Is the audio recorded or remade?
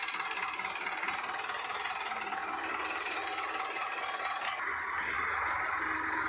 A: remade